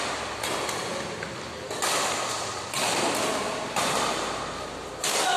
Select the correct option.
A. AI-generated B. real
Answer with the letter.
B